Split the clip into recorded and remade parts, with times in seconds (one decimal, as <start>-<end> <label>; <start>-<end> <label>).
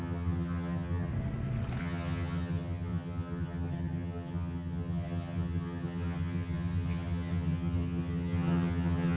0.0-1.1 remade; 1.1-1.8 recorded; 1.8-9.2 remade